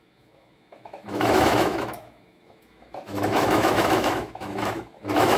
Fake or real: fake